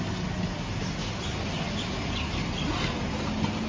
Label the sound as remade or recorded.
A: recorded